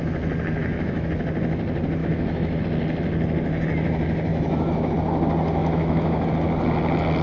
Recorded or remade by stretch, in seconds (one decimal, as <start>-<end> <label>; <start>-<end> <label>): 0.0-0.6 recorded; 0.6-1.1 remade; 1.1-2.0 recorded; 2.0-2.6 remade; 2.6-4.3 recorded; 4.3-4.9 remade; 4.9-5.6 recorded; 5.6-6.3 remade; 6.3-7.2 recorded